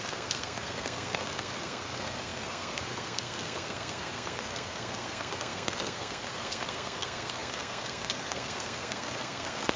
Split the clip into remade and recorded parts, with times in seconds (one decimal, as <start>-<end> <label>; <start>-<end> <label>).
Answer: 0.0-9.8 remade